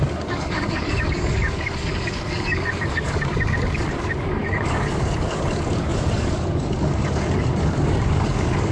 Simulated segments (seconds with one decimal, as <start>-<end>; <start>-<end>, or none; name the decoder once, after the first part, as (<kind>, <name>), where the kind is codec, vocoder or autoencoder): 0.0-8.7 (codec, DAC)